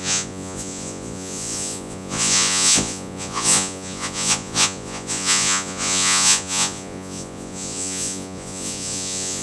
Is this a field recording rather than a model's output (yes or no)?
no